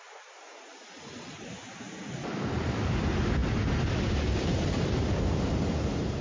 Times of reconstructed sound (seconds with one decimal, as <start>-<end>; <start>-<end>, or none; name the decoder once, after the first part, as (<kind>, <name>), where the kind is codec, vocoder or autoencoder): none